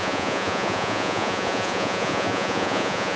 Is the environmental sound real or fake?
fake